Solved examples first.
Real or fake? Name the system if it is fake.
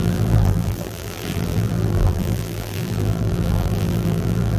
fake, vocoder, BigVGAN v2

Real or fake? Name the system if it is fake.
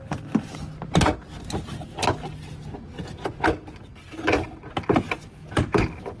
real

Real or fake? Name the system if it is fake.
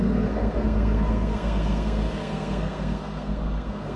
fake, codec, SNAC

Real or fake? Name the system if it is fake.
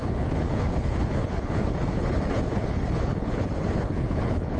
fake, codec, HILCodec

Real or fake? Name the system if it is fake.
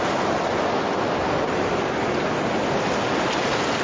real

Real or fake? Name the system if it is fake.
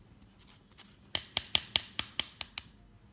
real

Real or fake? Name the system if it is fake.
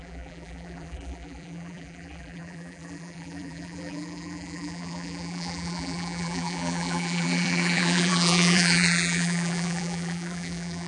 fake, vocoder, BigVGAN v2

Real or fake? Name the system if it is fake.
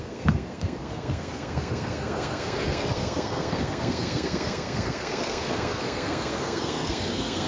fake, codec, SNAC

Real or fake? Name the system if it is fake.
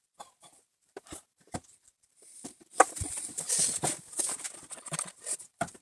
fake, vocoder, BigVGAN v2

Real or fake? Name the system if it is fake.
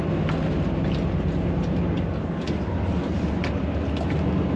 real